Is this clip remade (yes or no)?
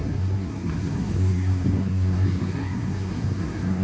yes